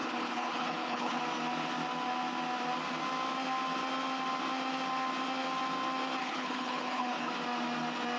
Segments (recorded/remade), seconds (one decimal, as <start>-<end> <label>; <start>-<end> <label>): 0.0-1.2 remade; 1.2-6.2 recorded; 6.2-7.3 remade; 7.3-8.2 recorded